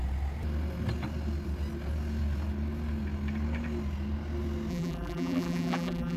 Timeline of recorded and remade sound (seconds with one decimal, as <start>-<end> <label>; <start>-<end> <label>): 0.0-4.7 recorded; 4.7-6.2 remade